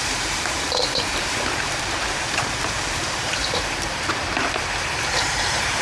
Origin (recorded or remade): remade